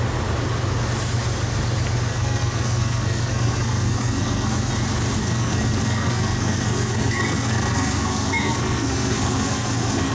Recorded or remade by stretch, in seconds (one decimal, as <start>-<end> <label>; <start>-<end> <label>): 0.0-2.1 recorded; 2.1-4.7 remade; 4.7-5.2 recorded; 5.2-10.1 remade